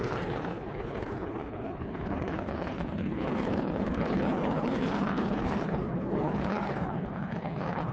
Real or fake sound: fake